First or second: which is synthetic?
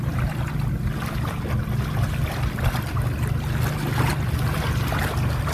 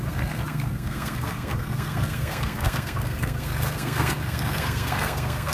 second